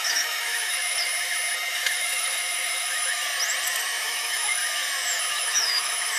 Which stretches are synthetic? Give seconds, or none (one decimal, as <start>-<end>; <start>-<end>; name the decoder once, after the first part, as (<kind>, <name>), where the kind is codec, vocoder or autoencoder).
0.0-1.1 (autoencoder, DAC-VAE); 1.7-3.2; 3.8-4.6; 5.3-6.2